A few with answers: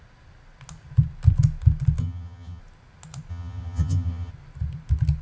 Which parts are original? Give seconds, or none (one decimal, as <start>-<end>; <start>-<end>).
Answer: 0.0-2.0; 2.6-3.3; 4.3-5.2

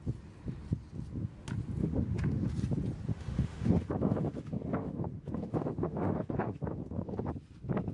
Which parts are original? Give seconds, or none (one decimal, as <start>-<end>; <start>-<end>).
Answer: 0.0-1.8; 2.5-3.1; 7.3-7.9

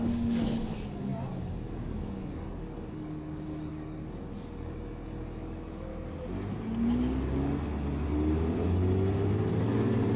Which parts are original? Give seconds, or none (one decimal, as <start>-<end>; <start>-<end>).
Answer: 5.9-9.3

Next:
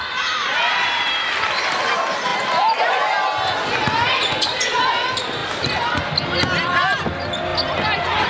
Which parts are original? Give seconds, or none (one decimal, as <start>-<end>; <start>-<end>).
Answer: 0.0-2.3; 2.9-5.4; 6.0-8.3

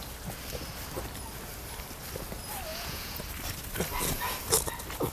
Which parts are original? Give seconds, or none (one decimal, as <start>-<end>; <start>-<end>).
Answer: 0.0-2.7; 3.2-5.1

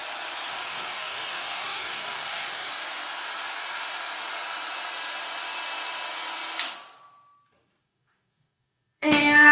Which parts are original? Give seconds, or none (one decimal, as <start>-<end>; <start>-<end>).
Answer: 0.0-0.5; 2.7-7.8